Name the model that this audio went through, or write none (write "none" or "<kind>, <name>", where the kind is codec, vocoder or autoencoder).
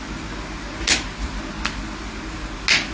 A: none